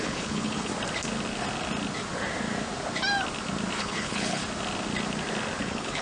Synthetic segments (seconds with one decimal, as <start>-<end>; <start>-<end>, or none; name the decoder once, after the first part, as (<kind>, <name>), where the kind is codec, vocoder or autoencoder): 0.0-0.7 (codec, HILCodec); 3.8-4.4; 5.6-6.0